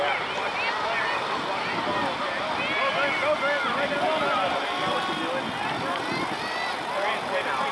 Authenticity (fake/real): real